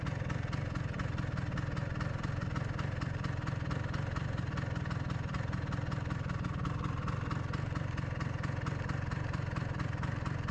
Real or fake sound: real